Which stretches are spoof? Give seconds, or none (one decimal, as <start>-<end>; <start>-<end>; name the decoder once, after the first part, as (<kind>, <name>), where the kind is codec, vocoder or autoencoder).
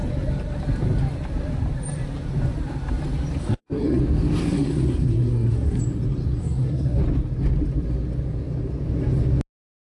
3.4-4.0 (codec, SNAC); 4.5-5.8; 6.4-7.0